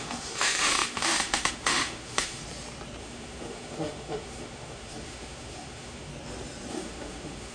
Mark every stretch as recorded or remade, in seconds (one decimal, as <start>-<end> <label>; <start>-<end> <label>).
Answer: 0.0-2.4 remade; 2.4-3.0 recorded; 3.0-6.1 remade; 6.1-6.7 recorded; 6.7-7.5 remade